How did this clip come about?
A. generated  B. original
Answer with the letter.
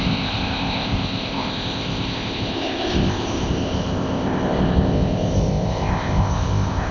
A